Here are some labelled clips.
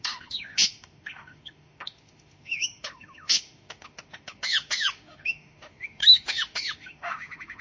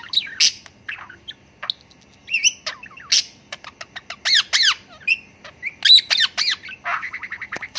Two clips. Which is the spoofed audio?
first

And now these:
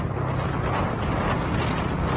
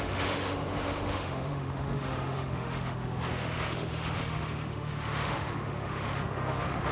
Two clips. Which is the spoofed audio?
second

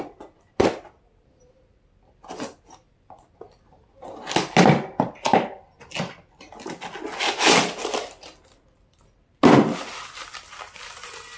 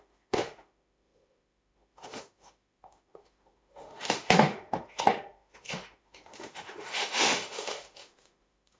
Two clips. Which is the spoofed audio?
second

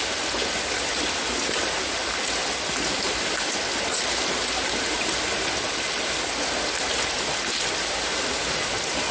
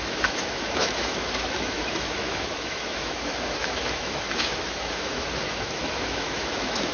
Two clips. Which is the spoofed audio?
second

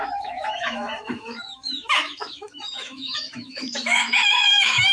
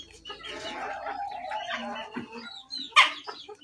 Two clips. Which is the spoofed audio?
first